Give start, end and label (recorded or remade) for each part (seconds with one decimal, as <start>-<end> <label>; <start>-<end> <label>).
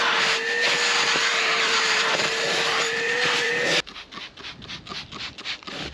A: 0.0-1.3 recorded; 1.3-3.5 remade; 3.5-5.9 recorded